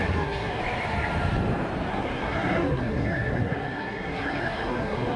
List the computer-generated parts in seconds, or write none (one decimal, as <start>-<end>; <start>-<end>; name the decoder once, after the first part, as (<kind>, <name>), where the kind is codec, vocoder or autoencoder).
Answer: 0.0-0.6 (codec, SNAC); 1.9-5.2

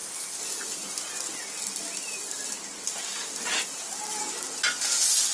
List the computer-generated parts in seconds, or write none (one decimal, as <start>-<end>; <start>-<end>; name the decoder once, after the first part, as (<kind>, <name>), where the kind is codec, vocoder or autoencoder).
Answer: none

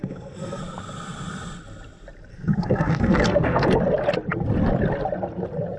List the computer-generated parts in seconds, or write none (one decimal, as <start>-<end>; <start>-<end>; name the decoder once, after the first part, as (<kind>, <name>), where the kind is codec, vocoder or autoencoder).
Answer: 0.0-0.6 (codec, SNAC); 2.3-3.8

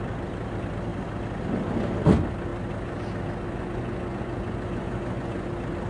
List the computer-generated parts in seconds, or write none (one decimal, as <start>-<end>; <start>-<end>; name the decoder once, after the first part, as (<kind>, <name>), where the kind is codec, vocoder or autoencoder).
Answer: 3.5-5.5 (vocoder, Vocos)

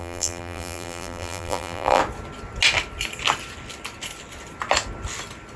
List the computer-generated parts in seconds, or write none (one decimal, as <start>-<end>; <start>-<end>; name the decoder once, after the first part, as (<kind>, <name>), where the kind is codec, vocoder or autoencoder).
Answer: 0.0-2.0 (vocoder, BigVGAN v2)

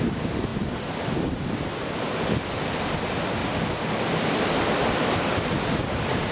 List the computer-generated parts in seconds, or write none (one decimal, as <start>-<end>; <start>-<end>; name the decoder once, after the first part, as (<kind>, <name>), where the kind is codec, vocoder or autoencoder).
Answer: 0.0-3.4 (vocoder, BigVGAN v2); 5.8-6.3

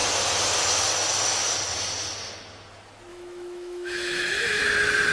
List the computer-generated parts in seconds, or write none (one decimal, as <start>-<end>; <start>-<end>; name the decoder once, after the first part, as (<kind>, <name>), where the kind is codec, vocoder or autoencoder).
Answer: 3.1-4.6 (autoencoder, DAC-VAE)